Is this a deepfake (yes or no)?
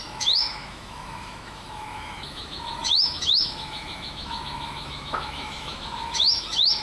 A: yes